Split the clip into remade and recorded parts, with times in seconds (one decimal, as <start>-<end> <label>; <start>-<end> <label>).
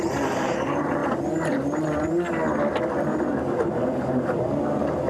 0.0-1.0 remade; 1.0-3.5 recorded; 3.5-5.1 remade